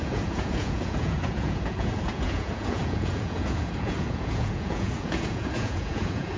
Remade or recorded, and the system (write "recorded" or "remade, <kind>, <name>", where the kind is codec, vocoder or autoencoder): remade, vocoder, Vocos